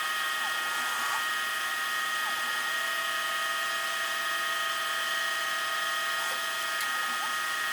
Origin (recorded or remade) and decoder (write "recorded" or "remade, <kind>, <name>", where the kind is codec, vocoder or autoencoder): recorded